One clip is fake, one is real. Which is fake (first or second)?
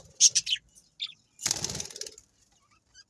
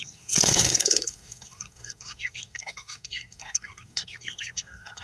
second